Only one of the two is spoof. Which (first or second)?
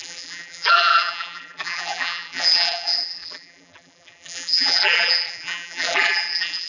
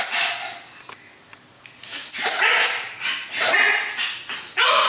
first